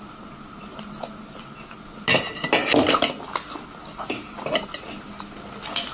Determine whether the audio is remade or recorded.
recorded